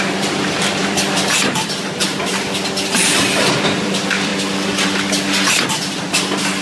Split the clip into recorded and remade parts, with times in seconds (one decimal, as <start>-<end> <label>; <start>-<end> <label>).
0.0-2.0 remade; 2.0-3.6 recorded; 3.6-4.3 remade; 4.3-5.7 recorded; 5.7-6.6 remade